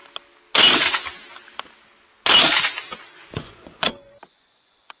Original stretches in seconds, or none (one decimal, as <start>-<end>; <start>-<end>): 0.0-3.0